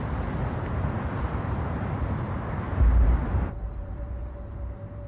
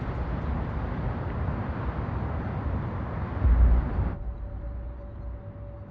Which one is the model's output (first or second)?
first